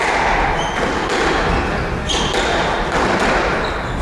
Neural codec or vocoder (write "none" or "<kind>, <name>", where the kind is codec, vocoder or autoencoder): none